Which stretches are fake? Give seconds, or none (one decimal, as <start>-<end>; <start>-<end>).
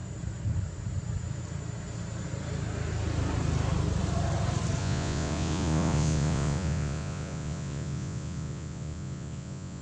4.8-9.8